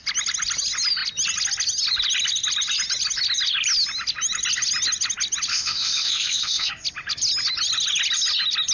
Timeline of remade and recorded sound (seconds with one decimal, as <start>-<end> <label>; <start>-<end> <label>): 0.0-5.5 recorded; 5.5-6.7 remade; 6.7-8.7 recorded

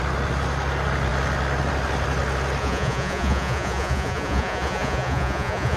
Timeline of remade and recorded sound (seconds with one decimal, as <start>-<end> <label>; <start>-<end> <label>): 0.0-2.6 recorded; 2.6-5.8 remade